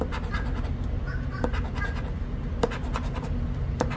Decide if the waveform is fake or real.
real